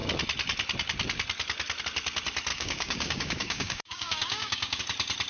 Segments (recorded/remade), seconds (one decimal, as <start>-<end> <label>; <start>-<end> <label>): 0.0-2.5 recorded; 2.5-4.8 remade; 4.8-5.3 recorded